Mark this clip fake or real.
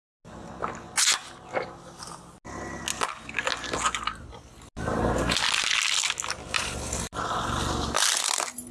real